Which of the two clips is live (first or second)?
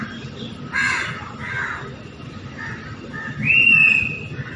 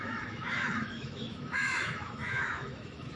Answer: first